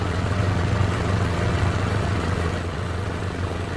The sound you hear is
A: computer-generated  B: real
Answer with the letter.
A